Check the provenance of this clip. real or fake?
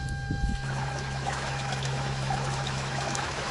fake